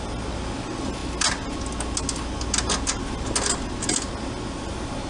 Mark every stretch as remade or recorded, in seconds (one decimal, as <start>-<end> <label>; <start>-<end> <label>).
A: 0.0-5.1 recorded